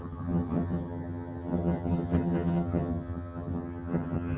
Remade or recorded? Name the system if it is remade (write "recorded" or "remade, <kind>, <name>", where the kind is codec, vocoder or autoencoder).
remade, vocoder, HiFi-GAN